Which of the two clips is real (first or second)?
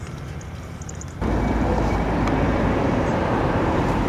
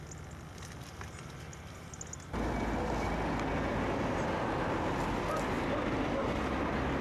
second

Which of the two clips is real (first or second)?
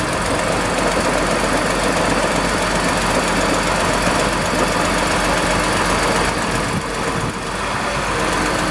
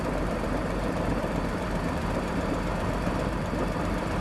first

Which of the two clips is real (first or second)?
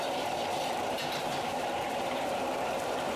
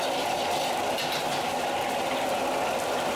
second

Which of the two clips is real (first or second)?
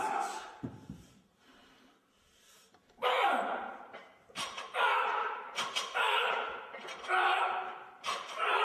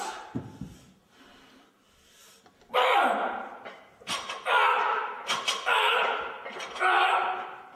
second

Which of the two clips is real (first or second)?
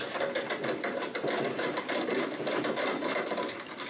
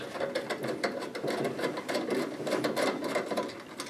second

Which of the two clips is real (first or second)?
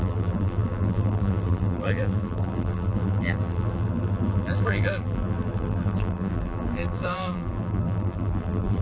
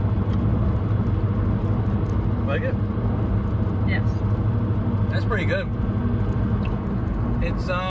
second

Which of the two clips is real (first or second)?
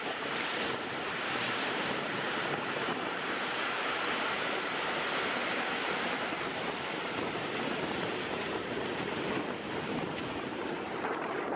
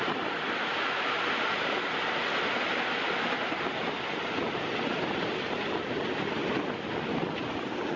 second